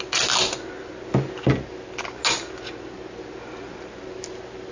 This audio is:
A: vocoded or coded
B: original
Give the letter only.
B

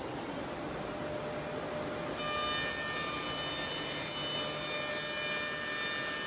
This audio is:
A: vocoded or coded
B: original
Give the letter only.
B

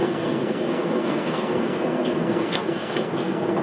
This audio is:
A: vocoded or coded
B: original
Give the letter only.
A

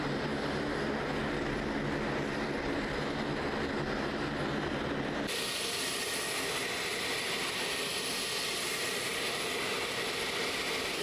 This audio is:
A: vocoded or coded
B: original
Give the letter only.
B